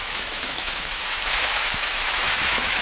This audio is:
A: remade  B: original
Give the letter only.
A